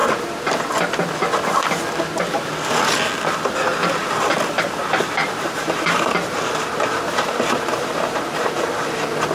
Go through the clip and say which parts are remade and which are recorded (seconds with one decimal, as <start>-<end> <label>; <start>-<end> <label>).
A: 0.0-0.9 remade; 0.9-3.8 recorded; 3.8-4.3 remade; 4.3-5.2 recorded; 5.2-9.3 remade